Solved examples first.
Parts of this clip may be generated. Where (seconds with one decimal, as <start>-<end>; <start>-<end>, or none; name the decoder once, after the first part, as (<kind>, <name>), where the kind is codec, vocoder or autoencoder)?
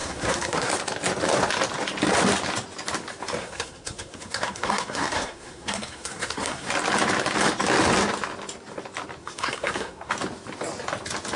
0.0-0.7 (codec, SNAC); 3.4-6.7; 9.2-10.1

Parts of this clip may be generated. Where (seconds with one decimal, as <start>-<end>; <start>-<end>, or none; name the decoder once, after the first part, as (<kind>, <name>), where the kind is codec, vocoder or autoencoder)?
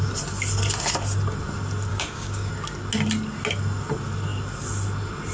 1.9-2.5 (codec, DAC)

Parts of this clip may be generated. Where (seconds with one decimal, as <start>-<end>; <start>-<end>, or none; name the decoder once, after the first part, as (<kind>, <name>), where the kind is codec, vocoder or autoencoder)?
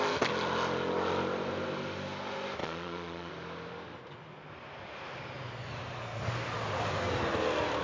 2.6-3.3 (vocoder, Vocos)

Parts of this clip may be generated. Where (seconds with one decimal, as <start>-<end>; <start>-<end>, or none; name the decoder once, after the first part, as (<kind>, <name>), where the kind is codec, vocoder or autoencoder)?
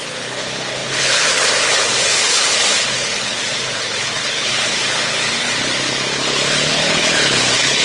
0.0-7.8 (codec, HILCodec)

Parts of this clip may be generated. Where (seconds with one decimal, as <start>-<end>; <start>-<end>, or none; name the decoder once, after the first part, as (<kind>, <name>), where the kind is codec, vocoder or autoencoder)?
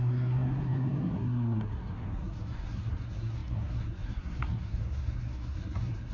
0.0-6.1 (codec, SNAC)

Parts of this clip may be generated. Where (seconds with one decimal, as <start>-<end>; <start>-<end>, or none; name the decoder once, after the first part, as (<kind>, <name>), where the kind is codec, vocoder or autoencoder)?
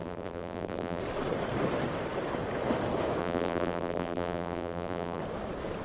0.0-1.0 (vocoder, BigVGAN v2); 3.2-5.2